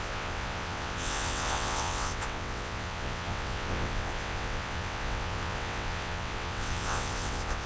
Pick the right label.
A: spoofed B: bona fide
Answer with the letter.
A